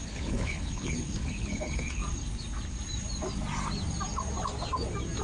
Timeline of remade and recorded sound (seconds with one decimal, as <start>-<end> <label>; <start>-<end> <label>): 0.0-2.0 remade; 2.0-5.2 recorded